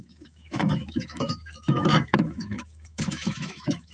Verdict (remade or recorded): remade